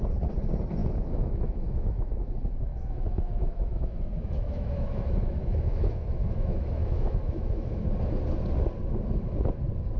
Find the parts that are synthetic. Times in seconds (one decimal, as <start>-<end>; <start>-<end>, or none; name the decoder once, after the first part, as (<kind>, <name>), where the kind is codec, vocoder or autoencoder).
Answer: 0.8-2.3 (autoencoder, DAC-VAE); 2.7-7.9